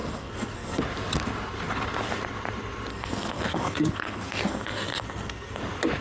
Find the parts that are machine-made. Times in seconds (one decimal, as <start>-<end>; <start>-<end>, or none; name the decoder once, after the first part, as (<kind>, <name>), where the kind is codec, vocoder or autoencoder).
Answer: 0.0-0.8 (codec, SNAC); 2.9-5.6